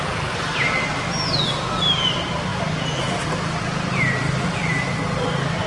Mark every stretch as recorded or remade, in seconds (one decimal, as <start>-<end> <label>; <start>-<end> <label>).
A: 0.0-5.7 recorded